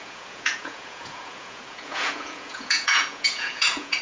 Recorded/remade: remade